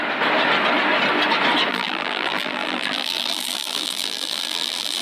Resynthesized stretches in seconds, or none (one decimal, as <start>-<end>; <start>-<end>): 1.7-5.0